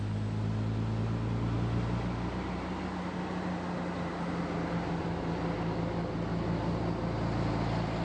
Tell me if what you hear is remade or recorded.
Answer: recorded